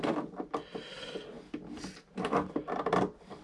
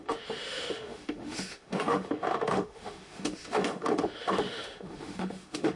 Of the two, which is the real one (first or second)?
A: first